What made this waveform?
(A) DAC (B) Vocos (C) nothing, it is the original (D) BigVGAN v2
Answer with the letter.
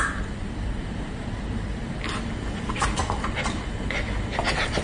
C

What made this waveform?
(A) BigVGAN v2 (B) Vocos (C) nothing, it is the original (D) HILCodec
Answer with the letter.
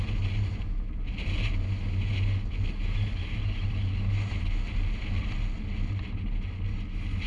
C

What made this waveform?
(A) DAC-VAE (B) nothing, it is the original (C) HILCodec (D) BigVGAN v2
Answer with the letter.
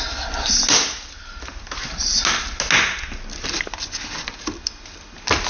B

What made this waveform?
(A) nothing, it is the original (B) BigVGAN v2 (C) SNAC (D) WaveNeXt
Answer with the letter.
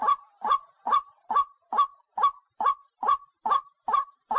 A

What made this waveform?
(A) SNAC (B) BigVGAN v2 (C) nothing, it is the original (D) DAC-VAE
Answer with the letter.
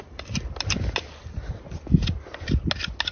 C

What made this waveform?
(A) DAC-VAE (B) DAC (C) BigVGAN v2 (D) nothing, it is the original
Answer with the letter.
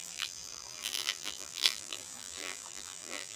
C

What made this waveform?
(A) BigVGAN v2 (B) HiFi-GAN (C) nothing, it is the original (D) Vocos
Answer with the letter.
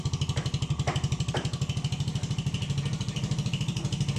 A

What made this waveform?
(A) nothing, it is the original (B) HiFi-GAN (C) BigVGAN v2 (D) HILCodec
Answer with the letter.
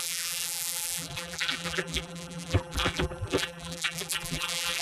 C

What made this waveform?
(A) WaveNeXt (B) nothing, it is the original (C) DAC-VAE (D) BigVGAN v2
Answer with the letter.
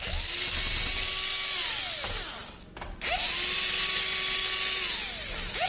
B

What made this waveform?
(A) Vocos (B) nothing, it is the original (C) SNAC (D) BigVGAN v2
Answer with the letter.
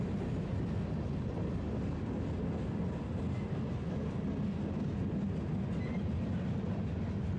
B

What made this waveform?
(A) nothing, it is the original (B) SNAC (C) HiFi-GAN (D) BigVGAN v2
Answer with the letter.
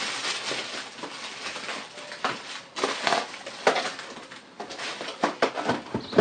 A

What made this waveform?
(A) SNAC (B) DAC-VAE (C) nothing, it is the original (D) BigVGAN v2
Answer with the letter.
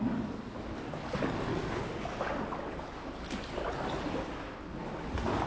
C